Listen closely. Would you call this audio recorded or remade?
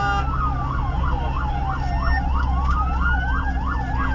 recorded